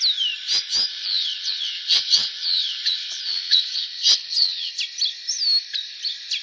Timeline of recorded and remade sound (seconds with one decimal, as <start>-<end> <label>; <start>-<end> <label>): 0.0-0.9 recorded; 0.9-4.7 remade; 4.7-6.4 recorded